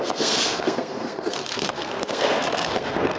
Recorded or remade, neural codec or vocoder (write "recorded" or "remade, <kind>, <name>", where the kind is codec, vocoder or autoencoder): remade, codec, SNAC